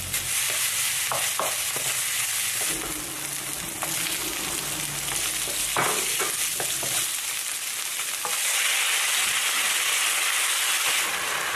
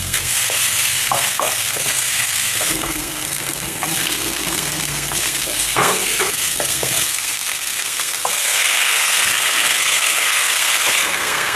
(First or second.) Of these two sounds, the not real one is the second